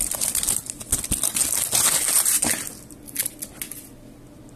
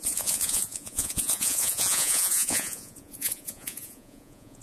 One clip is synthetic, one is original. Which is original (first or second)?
first